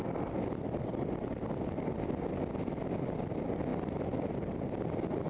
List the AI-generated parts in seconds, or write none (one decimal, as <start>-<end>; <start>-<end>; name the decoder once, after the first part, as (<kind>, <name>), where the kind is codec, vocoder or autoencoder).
none